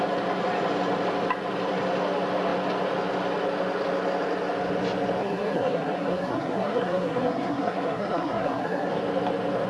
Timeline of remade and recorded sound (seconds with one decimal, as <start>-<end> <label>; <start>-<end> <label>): 0.0-5.2 recorded; 5.2-8.9 remade; 8.9-9.7 recorded